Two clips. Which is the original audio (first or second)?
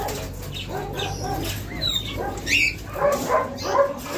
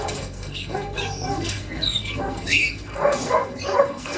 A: first